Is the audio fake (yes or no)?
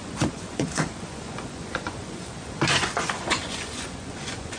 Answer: yes